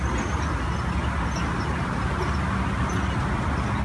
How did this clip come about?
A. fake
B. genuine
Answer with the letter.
B